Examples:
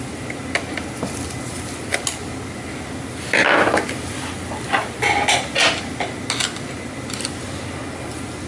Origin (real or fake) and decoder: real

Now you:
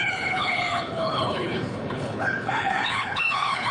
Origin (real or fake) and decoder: fake, codec, HILCodec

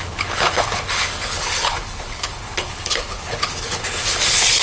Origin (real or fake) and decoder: fake, codec, HILCodec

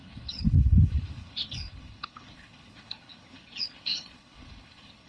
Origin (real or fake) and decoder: fake, codec, HILCodec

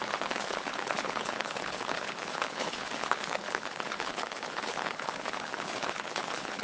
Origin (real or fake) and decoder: fake, codec, HILCodec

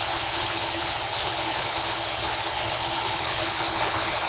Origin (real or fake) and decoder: fake, codec, HILCodec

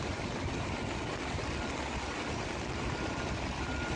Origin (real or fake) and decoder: real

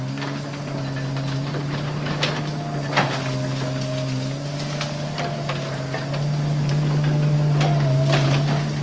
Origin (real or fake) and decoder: real